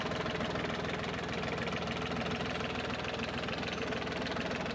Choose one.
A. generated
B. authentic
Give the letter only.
B